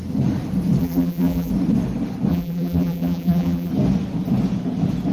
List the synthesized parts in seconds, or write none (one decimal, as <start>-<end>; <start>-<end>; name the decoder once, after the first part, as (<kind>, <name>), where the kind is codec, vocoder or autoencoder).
0.8-1.5 (vocoder, BigVGAN v2); 2.3-3.7